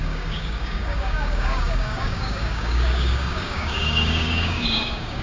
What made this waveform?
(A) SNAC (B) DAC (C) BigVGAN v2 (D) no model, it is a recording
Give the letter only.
B